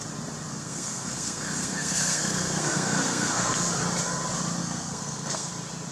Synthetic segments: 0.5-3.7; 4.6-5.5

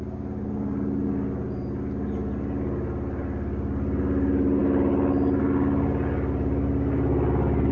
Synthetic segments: none

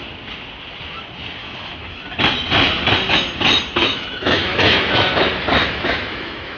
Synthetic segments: 1.4-2.0; 3.8-5.1; 5.6-6.6

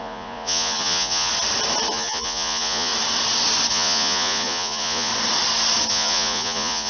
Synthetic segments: 0.0-1.3; 1.9-2.9; 3.7-5.1; 5.9-6.9

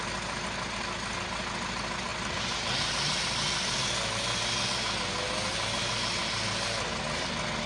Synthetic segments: none

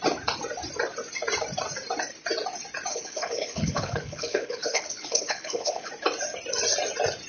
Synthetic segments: 2.9-5.9

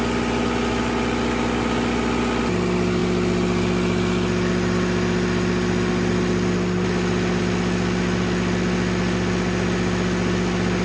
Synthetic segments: none